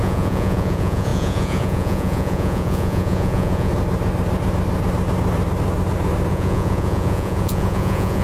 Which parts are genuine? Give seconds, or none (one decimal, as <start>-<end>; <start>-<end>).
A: 3.7-6.3